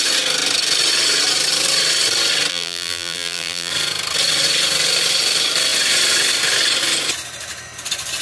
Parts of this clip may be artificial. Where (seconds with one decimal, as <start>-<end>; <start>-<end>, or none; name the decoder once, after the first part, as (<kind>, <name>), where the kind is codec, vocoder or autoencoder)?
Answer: 2.5-3.7 (vocoder, BigVGAN v2)